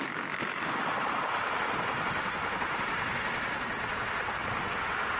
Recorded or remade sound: recorded